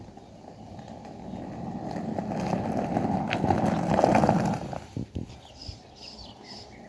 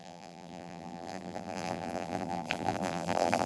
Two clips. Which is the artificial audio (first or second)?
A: second